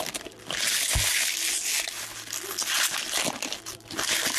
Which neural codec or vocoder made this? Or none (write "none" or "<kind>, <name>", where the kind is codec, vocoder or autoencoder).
none